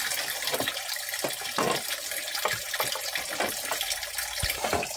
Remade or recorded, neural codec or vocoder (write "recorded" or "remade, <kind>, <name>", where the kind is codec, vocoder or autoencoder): remade, vocoder, BigVGAN v2